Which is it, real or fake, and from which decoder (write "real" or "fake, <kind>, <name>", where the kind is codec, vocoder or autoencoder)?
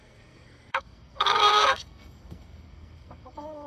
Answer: fake, codec, SNAC